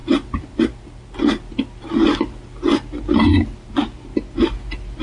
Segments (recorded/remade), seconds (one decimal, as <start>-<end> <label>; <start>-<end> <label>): 0.0-5.0 remade